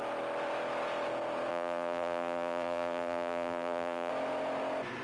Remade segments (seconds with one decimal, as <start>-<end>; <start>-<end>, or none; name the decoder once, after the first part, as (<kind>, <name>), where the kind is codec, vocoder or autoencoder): 1.5-4.1 (vocoder, BigVGAN v2)